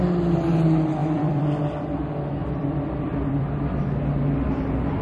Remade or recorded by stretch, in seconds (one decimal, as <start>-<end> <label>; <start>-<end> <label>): 0.0-1.0 recorded; 1.0-1.6 remade; 1.6-2.4 recorded; 2.4-3.8 remade; 3.8-5.0 recorded